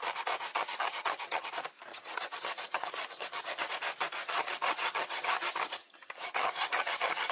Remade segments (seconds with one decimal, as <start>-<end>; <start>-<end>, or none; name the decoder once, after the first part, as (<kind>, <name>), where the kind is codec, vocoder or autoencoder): 0.5-1.5 (vocoder, HiFi-GAN); 1.9-3.7; 4.2-7.3